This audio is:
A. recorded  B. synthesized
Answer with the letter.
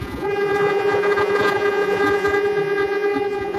B